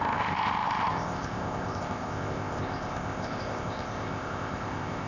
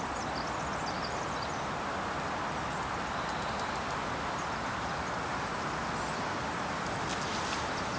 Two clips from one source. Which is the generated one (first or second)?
first